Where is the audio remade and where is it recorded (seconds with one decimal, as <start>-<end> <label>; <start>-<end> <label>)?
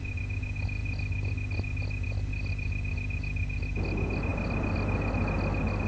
0.0-5.9 recorded